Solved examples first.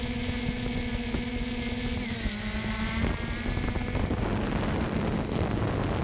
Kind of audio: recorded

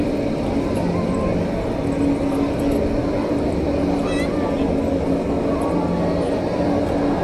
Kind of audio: recorded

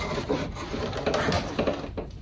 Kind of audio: recorded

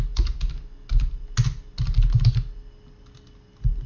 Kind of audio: recorded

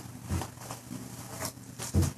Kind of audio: remade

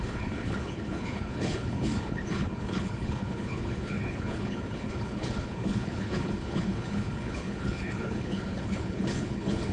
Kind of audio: remade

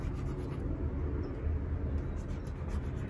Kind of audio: recorded